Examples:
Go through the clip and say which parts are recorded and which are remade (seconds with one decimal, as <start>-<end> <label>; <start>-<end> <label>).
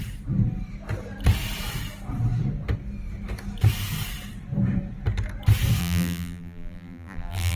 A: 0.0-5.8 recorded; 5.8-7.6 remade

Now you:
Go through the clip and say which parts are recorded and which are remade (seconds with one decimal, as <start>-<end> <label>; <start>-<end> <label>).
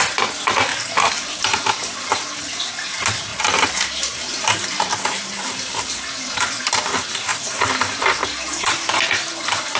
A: 0.0-0.7 recorded; 0.7-1.7 remade; 1.7-3.3 recorded; 3.3-6.0 remade; 6.0-7.3 recorded; 7.3-8.7 remade; 8.7-9.8 recorded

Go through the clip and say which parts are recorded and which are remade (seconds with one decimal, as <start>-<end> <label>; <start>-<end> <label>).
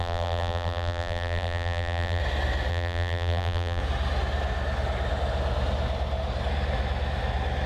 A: 0.0-2.2 remade; 2.2-2.7 recorded; 2.7-3.8 remade; 3.8-7.7 recorded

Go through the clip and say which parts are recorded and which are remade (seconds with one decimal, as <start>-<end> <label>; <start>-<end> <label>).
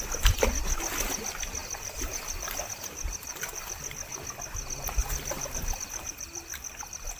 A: 0.0-1.6 recorded; 1.6-2.7 remade; 2.7-3.3 recorded; 3.3-4.2 remade; 4.2-5.0 recorded; 5.0-6.8 remade; 6.8-7.2 recorded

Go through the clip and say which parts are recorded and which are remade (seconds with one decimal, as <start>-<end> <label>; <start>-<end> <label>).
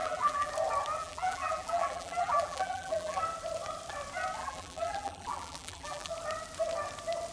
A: 0.0-0.5 remade; 0.5-1.0 recorded; 1.0-3.2 remade; 3.2-4.4 recorded; 4.4-6.1 remade; 6.1-7.3 recorded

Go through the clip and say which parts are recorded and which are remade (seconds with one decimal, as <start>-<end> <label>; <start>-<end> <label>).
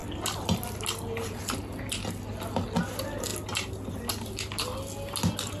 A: 0.0-5.6 recorded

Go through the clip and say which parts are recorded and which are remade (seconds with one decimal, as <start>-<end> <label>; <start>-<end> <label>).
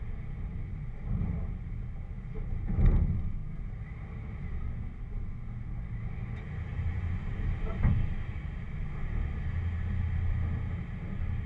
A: 0.0-6.7 recorded; 6.7-7.8 remade; 7.8-11.5 recorded